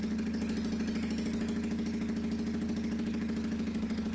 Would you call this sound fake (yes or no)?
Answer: no